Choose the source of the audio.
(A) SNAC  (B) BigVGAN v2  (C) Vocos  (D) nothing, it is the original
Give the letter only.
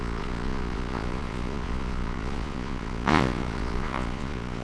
C